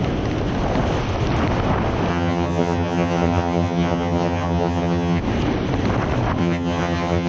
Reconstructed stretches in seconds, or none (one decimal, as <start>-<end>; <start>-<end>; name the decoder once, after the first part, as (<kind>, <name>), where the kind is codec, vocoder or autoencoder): 2.1-5.2 (vocoder, HiFi-GAN); 6.4-7.3